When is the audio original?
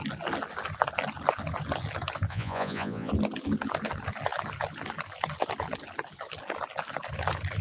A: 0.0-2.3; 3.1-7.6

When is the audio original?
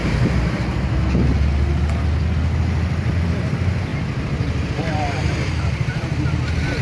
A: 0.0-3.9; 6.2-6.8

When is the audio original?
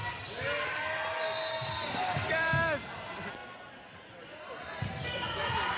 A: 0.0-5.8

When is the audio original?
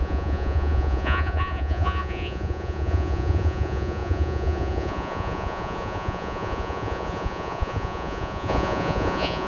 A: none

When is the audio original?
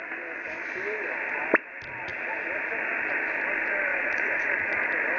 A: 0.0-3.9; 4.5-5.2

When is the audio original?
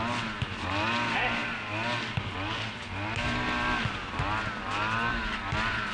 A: 0.0-5.9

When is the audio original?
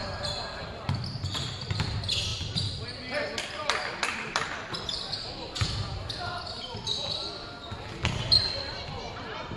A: 0.0-2.3; 5.0-9.6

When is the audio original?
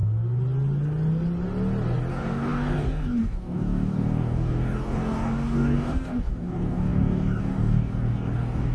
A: 0.0-2.1